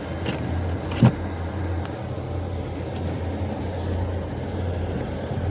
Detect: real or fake real